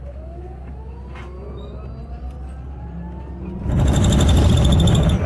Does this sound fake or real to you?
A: real